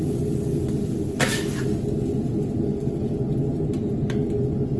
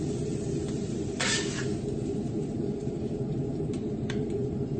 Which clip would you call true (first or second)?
first